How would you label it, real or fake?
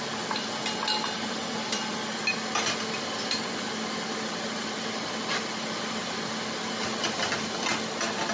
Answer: real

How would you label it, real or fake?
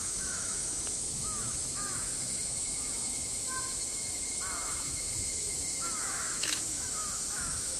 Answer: fake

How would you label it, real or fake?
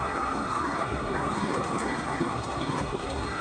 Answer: fake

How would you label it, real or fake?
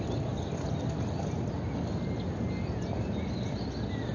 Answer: real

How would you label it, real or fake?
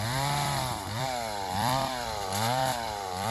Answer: fake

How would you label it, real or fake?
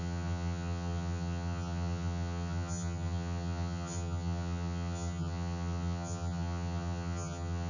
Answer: fake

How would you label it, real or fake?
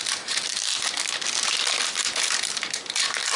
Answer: real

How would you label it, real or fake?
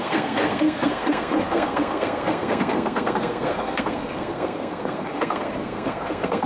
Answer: fake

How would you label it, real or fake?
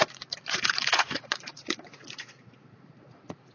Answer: fake